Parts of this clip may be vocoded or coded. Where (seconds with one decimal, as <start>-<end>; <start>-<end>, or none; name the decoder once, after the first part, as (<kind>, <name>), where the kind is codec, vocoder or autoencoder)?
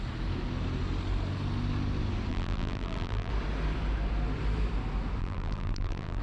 2.3-3.3 (vocoder, BigVGAN v2); 5.2-6.2